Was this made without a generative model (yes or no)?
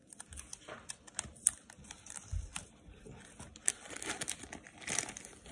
yes